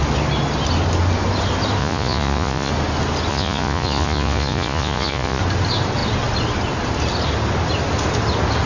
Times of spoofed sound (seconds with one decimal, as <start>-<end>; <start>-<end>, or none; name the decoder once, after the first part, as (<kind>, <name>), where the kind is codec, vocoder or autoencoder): 1.8-2.7 (vocoder, Vocos); 3.3-5.4